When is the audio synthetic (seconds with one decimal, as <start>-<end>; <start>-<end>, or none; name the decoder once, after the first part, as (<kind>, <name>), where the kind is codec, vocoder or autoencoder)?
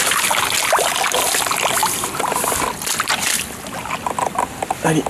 none